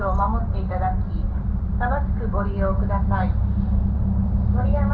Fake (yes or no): no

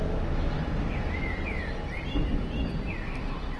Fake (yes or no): no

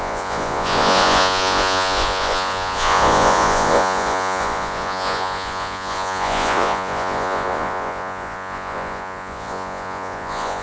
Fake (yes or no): yes